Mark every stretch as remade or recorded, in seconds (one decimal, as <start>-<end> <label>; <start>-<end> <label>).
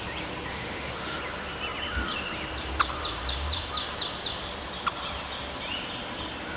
0.0-0.5 recorded; 0.5-1.2 remade; 1.2-6.6 recorded